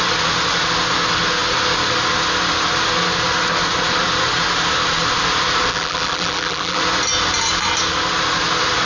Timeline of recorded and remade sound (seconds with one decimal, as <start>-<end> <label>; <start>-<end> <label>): 0.0-5.7 recorded; 5.7-6.8 remade; 6.8-8.9 recorded

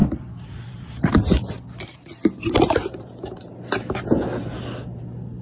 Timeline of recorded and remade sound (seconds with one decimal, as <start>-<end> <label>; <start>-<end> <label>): 0.0-3.2 remade; 3.2-5.4 recorded